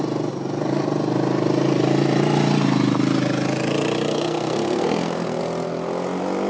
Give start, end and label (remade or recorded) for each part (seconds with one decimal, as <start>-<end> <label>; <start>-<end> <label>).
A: 0.0-4.1 recorded; 4.1-5.4 remade; 5.4-6.5 recorded